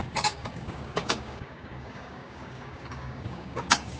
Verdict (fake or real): fake